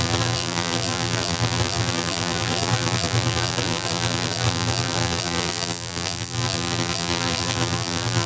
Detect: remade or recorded remade